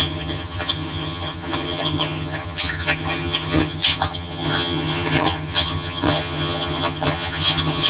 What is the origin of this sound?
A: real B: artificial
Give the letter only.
B